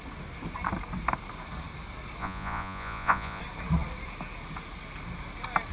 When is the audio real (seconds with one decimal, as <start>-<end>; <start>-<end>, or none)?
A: 0.0-2.2; 3.4-5.7